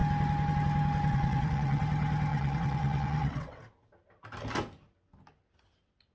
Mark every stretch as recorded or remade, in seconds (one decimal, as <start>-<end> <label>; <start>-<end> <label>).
0.0-1.1 recorded; 1.1-1.8 remade; 1.8-2.3 recorded; 2.3-3.6 remade; 3.6-6.1 recorded